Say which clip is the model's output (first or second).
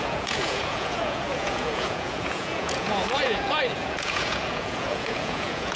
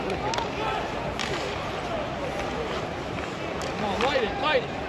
first